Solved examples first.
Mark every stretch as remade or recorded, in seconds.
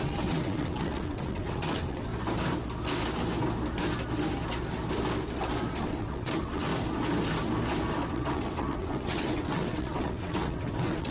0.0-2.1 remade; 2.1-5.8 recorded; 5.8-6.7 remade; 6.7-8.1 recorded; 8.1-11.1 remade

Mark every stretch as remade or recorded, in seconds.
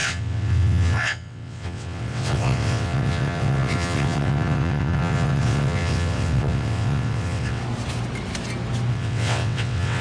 0.0-7.6 remade; 7.6-8.9 recorded; 8.9-10.0 remade